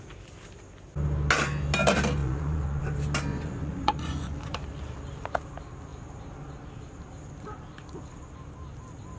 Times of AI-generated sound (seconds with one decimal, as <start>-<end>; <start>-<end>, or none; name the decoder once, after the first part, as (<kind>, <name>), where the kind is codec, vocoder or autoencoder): 2.2-2.8 (vocoder, Vocos); 3.3-4.6